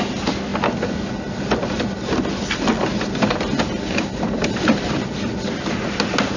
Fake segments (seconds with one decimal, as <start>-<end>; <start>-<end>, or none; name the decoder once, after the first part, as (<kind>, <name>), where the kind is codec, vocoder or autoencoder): none